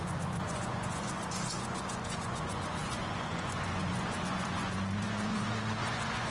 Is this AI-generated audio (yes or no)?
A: yes